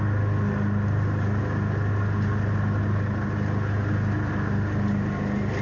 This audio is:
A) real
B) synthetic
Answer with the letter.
A